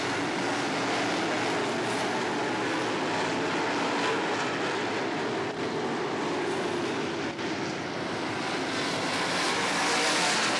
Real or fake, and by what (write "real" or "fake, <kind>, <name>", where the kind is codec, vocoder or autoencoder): real